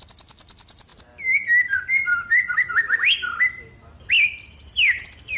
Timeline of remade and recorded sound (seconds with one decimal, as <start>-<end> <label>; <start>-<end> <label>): 0.0-5.4 recorded